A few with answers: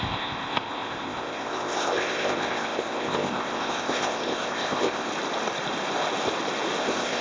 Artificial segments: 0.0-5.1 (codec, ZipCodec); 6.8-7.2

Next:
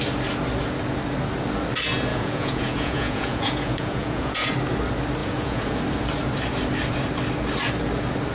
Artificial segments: 2.1-4.5 (vocoder, Vocos); 5.2-5.8

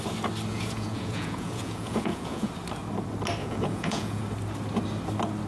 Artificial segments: 0.5-2.5 (vocoder, Vocos); 3.4-4.2

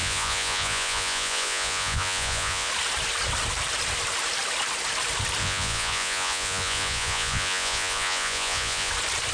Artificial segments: 0.0-2.7 (vocoder, Vocos); 5.4-8.9